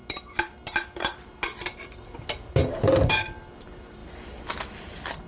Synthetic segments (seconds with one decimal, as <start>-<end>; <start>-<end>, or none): none